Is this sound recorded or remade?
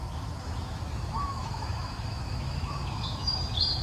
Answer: remade